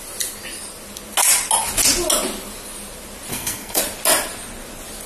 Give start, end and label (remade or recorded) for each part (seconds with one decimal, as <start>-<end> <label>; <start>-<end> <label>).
0.0-3.3 recorded; 3.3-3.8 remade; 3.8-5.1 recorded